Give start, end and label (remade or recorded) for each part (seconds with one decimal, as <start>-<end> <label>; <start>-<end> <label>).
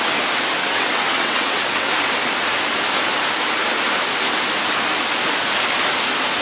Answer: 0.0-0.6 recorded; 0.6-1.9 remade; 1.9-6.4 recorded